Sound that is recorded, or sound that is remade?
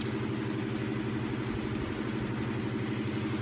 recorded